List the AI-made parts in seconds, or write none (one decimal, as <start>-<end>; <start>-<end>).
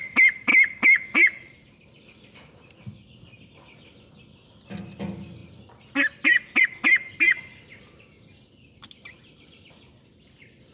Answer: none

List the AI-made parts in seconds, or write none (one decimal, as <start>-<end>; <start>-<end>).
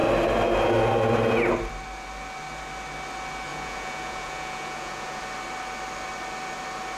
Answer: 3.5-5.2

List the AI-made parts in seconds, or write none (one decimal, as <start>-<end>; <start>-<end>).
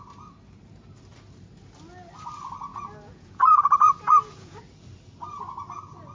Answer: 2.7-4.6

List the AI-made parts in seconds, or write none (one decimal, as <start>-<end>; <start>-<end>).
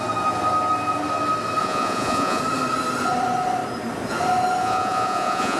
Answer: 1.6-2.4; 4.6-5.6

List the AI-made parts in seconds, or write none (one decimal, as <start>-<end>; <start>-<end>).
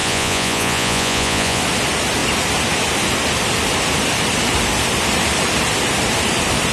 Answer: 0.0-1.6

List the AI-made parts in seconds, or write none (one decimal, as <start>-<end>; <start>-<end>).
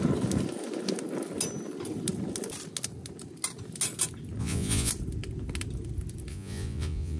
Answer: 4.4-4.9; 6.3-7.2